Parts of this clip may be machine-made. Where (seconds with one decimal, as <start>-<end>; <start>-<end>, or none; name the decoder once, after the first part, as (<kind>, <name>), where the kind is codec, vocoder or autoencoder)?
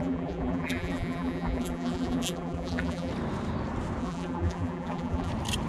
0.0-3.1 (vocoder, BigVGAN v2); 4.0-5.3